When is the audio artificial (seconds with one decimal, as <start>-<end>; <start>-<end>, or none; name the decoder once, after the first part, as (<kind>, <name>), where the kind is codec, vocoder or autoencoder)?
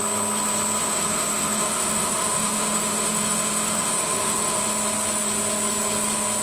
0.8-4.6 (autoencoder, DAC-VAE)